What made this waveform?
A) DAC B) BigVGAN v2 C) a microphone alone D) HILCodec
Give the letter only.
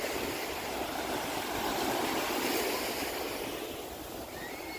C